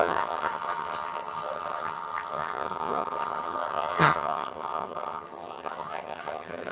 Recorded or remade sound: remade